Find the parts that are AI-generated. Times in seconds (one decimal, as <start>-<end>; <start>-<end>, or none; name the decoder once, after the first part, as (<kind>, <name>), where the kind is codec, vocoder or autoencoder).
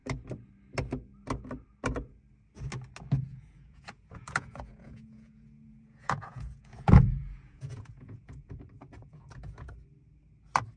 3.3-8.6 (vocoder, Vocos); 9.0-9.7